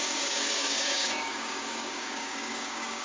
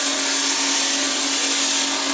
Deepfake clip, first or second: first